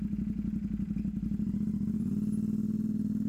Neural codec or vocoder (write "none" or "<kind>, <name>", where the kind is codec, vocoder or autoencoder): none